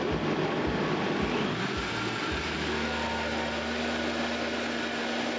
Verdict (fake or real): real